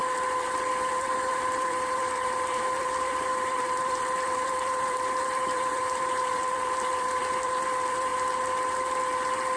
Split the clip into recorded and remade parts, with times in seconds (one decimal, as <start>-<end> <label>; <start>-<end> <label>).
0.0-0.9 recorded; 0.9-8.1 remade; 8.1-9.6 recorded